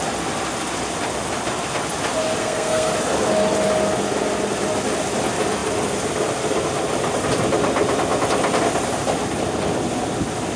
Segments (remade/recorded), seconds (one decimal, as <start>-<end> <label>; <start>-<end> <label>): 0.0-2.4 recorded; 2.4-2.9 remade; 2.9-10.6 recorded